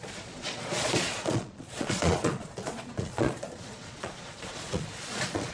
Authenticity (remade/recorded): remade